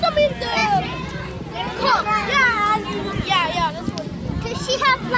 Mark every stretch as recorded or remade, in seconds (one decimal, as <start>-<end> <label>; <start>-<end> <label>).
0.0-5.2 recorded